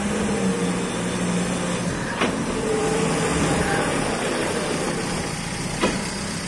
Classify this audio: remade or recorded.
recorded